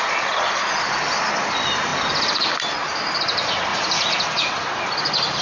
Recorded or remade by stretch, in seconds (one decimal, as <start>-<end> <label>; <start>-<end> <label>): 0.0-3.7 recorded; 3.7-4.2 remade; 4.2-5.4 recorded